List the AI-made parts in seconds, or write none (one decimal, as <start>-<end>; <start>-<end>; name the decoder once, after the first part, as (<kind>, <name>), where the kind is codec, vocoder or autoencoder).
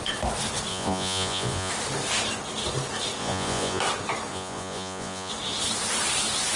0.7-1.7 (vocoder, Vocos); 3.2-3.8; 4.3-5.3